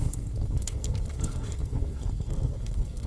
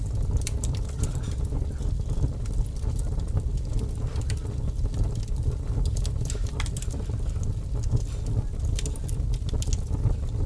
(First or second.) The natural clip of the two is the second